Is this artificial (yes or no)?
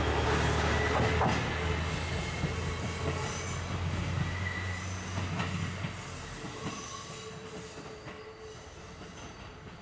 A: no